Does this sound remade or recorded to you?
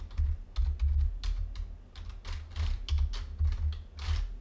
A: recorded